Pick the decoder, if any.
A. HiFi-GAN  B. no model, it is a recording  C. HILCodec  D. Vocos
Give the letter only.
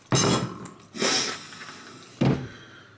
B